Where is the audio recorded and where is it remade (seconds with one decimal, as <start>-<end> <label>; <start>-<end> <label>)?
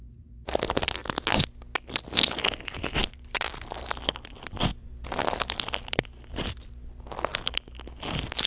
0.0-1.0 remade; 1.0-3.0 recorded; 3.0-7.3 remade; 7.3-8.5 recorded